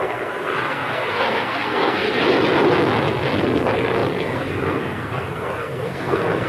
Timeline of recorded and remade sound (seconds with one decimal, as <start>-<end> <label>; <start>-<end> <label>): 0.0-2.2 remade; 2.2-3.4 recorded; 3.4-6.5 remade